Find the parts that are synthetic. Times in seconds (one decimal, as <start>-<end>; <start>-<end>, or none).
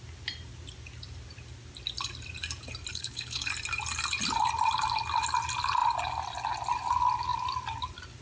2.9-3.4